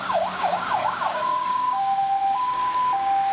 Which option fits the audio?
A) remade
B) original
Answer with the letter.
A